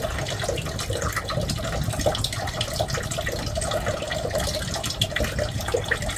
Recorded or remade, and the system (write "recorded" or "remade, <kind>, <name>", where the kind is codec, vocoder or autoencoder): recorded